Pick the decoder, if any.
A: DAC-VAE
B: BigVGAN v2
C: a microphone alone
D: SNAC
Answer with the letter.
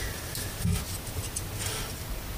C